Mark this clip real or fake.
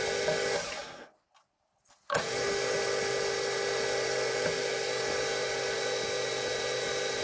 real